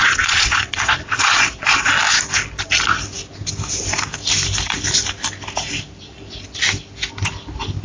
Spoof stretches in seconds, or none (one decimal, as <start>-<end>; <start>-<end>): 0.0-1.9